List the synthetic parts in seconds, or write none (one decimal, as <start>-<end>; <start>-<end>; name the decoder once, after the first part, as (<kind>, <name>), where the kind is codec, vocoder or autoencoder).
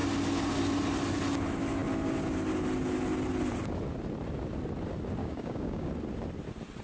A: 5.2-5.9 (codec, DAC)